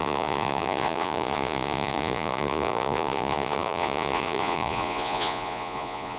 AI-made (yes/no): yes